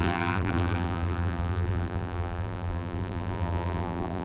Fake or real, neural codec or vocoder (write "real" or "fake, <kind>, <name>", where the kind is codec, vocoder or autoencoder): fake, vocoder, BigVGAN v2